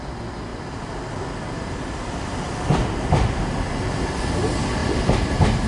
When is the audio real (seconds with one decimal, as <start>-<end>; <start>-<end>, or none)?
0.0-5.7